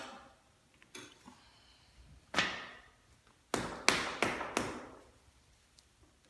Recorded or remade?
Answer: recorded